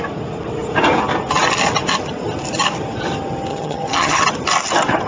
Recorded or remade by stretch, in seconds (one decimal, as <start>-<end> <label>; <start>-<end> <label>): 0.0-3.5 recorded; 3.5-4.2 remade; 4.2-5.1 recorded